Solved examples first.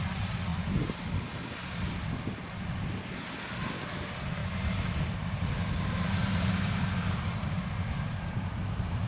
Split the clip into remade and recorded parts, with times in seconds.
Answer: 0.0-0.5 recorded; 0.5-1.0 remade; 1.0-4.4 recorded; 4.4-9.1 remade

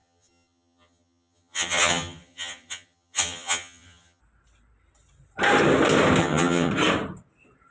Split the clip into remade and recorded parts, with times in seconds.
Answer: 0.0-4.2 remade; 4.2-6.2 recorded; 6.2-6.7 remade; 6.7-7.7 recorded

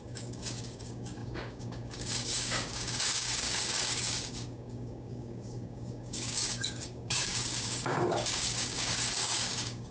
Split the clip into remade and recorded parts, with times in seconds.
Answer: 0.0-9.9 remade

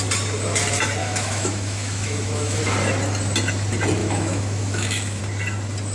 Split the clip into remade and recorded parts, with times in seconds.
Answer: 0.0-1.0 recorded; 1.0-2.6 remade; 2.6-4.0 recorded; 4.0-5.2 remade; 5.2-5.9 recorded

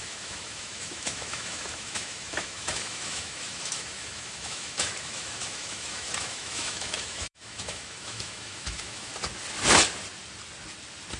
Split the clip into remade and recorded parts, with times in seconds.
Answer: 0.0-9.1 remade; 9.1-11.2 recorded

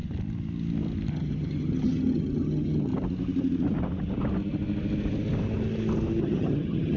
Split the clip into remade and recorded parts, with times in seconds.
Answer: 0.0-1.1 recorded; 1.1-2.9 remade; 2.9-6.2 recorded; 6.2-7.0 remade